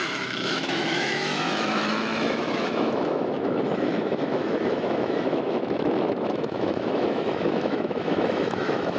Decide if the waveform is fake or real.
fake